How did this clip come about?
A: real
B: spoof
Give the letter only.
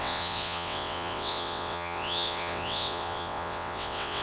B